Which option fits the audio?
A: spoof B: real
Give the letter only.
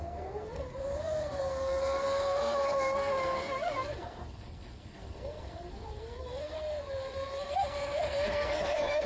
A